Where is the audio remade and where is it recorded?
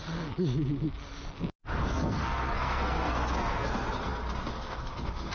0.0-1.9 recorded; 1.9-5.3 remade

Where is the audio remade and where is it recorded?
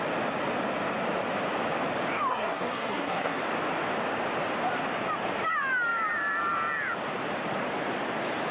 0.0-2.3 recorded; 2.3-3.4 remade; 3.4-8.5 recorded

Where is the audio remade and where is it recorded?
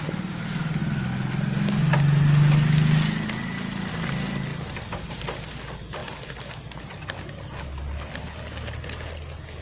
0.0-9.6 recorded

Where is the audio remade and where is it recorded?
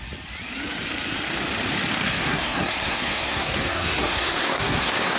0.0-2.0 recorded; 2.0-5.2 remade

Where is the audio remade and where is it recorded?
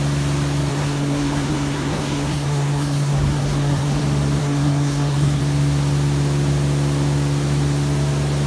0.0-0.7 recorded; 0.7-4.0 remade; 4.0-4.4 recorded; 4.4-5.4 remade; 5.4-8.5 recorded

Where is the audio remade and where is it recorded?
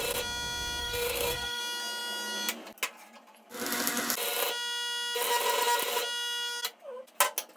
0.0-0.8 recorded; 0.8-1.6 remade; 1.6-7.6 recorded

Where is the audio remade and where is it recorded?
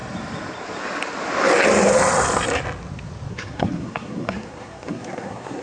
0.0-3.3 recorded; 3.3-5.6 remade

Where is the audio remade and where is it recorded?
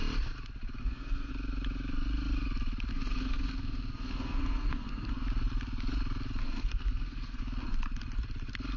0.0-0.8 recorded; 0.8-1.3 remade; 1.3-2.9 recorded; 2.9-5.1 remade; 5.1-6.4 recorded; 6.4-7.4 remade; 7.4-8.8 recorded